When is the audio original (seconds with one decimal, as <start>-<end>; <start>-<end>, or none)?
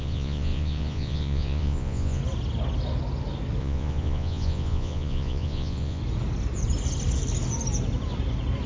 2.2-3.6; 6.0-8.7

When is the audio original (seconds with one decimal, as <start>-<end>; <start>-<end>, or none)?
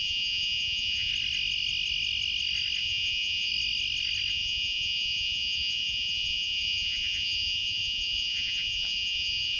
1.1-2.8; 3.5-4.3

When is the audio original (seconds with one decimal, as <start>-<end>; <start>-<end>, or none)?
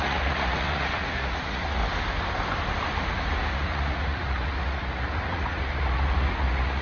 1.8-3.5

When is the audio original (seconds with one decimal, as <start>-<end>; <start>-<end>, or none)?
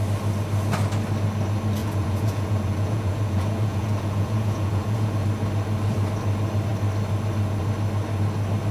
0.0-1.8; 5.1-8.7